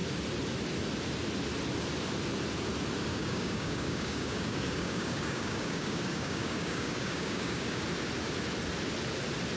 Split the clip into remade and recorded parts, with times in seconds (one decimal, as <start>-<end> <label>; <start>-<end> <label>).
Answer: 0.0-3.1 recorded; 3.1-7.8 remade; 7.8-9.6 recorded